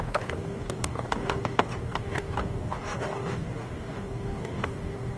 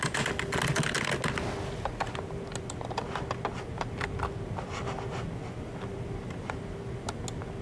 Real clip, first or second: second